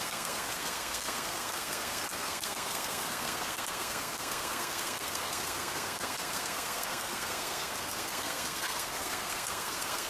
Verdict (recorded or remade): remade